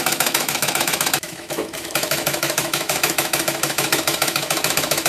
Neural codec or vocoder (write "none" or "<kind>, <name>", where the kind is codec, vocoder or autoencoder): autoencoder, DAC-VAE